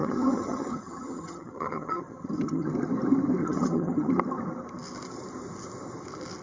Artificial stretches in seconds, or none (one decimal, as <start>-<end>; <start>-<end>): 0.0-2.7; 3.4-4.1